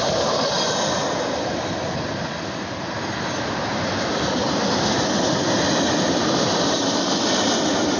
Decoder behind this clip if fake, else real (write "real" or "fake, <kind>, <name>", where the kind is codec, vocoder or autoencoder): real